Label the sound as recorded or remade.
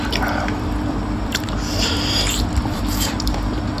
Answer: remade